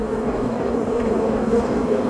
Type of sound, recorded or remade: remade